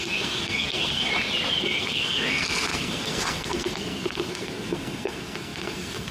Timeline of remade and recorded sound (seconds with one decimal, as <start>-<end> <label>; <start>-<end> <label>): 0.0-1.1 remade; 1.1-1.6 recorded; 1.6-6.1 remade